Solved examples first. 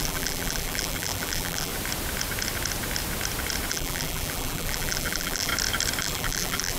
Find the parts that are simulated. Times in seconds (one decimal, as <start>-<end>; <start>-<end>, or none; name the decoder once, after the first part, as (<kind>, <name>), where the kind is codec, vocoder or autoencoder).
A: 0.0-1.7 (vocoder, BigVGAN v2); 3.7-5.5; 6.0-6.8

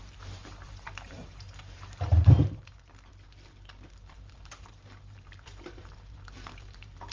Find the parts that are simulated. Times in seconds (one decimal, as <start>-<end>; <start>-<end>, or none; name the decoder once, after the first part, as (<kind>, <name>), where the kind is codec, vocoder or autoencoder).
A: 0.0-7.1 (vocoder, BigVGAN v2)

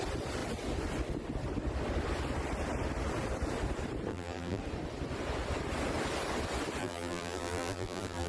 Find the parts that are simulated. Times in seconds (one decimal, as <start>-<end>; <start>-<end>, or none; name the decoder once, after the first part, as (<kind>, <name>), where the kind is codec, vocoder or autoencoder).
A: 4.1-4.6 (vocoder, BigVGAN v2); 6.8-8.3

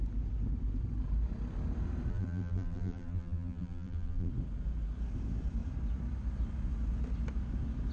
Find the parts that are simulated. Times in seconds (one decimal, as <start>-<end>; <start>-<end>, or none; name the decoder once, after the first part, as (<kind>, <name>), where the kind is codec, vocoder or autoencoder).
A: 2.1-4.3 (vocoder, BigVGAN v2)

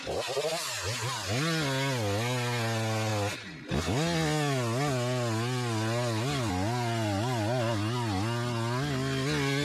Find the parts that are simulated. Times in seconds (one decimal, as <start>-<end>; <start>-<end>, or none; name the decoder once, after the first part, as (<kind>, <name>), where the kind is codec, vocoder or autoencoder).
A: none

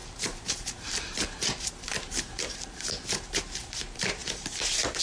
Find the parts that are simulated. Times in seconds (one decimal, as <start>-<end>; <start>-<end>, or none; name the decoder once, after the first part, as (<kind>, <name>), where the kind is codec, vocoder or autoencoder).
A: 0.0-5.0 (vocoder, BigVGAN v2)